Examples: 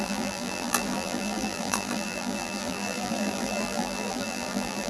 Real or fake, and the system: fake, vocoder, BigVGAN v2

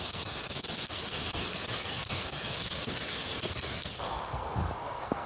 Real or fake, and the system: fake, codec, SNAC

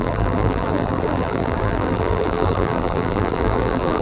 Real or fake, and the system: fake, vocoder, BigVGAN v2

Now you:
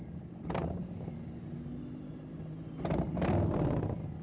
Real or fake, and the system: real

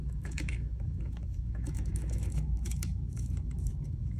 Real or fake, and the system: fake, autoencoder, DAC-VAE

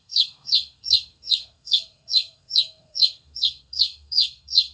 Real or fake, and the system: fake, codec, SNAC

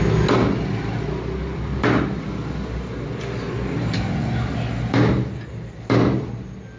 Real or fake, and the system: real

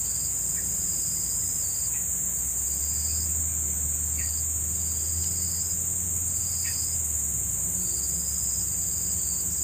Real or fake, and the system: real